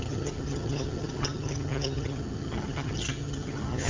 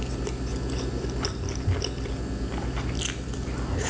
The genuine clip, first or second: second